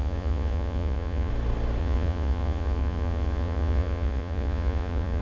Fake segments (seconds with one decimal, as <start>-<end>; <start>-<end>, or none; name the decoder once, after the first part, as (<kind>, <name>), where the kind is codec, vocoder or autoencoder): 0.0-1.3 (vocoder, Vocos); 1.8-5.2